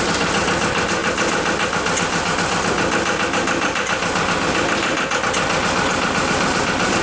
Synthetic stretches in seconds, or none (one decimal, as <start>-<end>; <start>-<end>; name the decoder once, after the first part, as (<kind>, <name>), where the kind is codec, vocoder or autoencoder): none